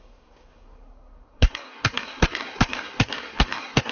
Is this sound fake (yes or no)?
yes